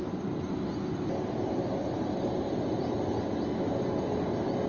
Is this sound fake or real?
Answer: real